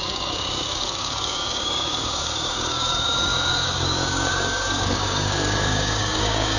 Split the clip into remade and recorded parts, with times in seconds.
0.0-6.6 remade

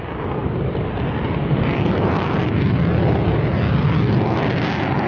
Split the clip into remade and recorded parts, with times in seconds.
0.0-5.1 recorded

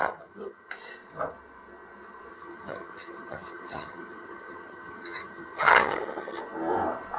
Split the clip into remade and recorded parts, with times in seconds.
0.0-0.7 remade; 0.7-2.3 recorded; 2.3-6.4 remade; 6.4-7.2 recorded